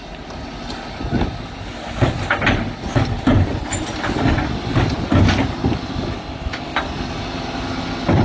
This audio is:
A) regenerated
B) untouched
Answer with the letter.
B